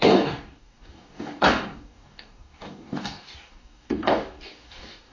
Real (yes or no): no